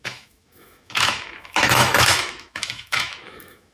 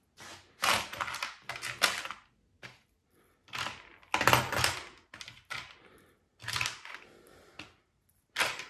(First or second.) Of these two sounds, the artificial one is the first